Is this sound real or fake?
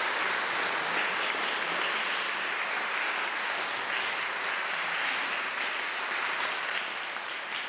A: real